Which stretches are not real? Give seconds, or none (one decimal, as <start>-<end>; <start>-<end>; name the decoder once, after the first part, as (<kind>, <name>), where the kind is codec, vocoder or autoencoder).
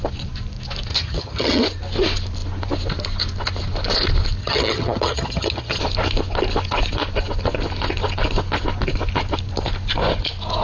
0.9-1.6 (vocoder, HiFi-GAN); 4.4-5.8